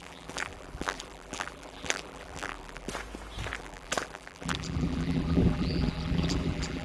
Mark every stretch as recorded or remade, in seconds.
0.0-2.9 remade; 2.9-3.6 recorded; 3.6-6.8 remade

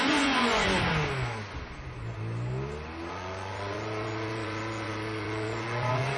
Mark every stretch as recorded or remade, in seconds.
0.0-0.9 remade; 0.9-3.1 recorded; 3.1-6.2 remade

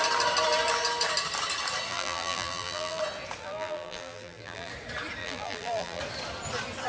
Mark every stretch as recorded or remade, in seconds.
0.0-1.9 recorded; 1.9-3.0 remade; 3.0-3.4 recorded; 3.4-4.7 remade; 4.7-5.2 recorded; 5.2-6.0 remade; 6.0-6.9 recorded

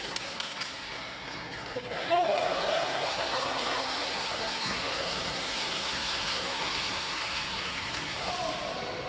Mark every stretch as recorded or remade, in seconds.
0.0-8.3 remade; 8.3-9.1 recorded

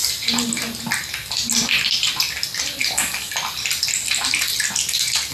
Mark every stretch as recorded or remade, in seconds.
0.0-2.8 recorded; 2.8-3.3 remade; 3.3-5.3 recorded